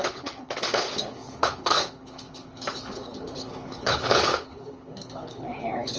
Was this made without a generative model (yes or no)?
no